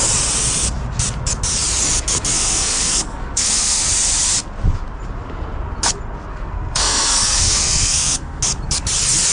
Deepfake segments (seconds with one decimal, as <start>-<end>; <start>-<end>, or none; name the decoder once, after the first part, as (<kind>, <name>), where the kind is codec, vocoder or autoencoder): 2.3-3.9 (codec, SNAC); 6.3-8.4